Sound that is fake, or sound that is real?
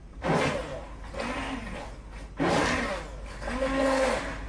real